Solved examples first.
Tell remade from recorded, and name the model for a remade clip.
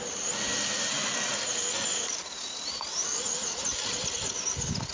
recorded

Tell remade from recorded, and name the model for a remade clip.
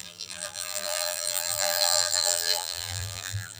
remade, vocoder, BigVGAN v2